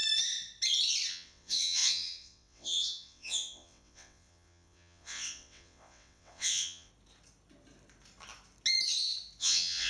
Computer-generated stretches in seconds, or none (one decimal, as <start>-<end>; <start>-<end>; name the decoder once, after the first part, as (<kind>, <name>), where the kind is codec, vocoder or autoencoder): 1.1-6.9 (vocoder, WaveNeXt); 9.4-9.9